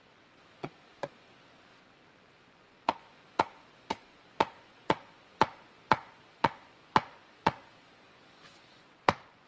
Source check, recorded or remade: remade